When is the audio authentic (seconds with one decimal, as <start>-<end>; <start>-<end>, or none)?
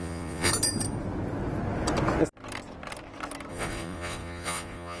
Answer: 0.5-3.5